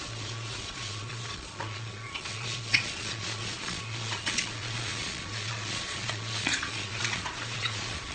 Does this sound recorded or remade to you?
remade